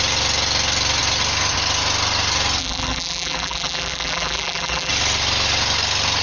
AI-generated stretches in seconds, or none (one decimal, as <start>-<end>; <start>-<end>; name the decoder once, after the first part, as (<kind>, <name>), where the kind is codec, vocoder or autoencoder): 2.6-4.9 (vocoder, BigVGAN v2)